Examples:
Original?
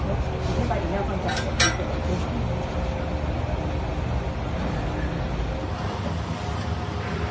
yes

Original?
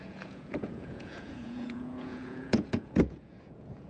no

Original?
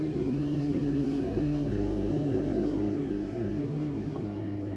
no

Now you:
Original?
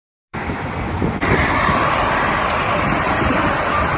no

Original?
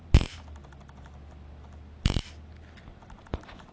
yes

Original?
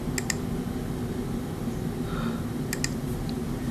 yes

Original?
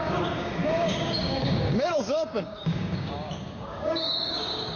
no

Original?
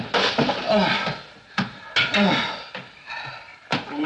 yes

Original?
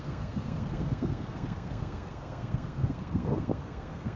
no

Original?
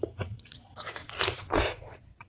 no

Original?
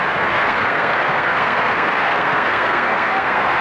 no